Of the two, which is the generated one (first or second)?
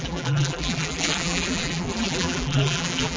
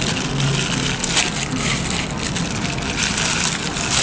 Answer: first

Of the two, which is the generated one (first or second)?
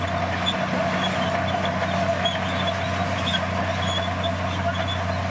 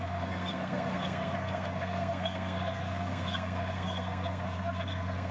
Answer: second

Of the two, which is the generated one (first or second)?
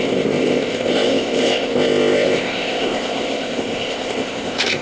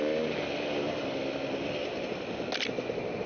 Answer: first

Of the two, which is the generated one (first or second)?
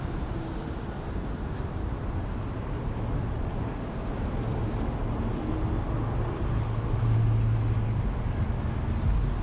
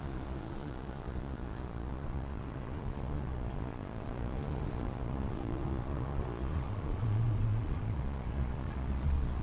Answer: second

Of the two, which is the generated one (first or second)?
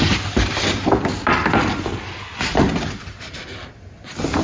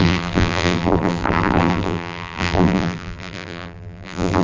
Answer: second